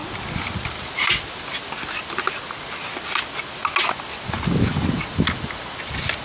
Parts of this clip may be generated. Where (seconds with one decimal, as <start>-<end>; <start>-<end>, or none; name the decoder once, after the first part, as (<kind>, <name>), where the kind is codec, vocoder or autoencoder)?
none